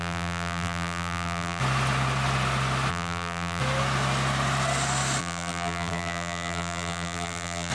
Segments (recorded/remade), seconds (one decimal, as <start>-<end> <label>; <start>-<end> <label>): 0.0-1.6 remade; 1.6-2.9 recorded; 2.9-3.6 remade; 3.6-5.2 recorded; 5.2-7.7 remade